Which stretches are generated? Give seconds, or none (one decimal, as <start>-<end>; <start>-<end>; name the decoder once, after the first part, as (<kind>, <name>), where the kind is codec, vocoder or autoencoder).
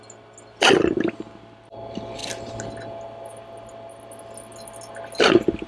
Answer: none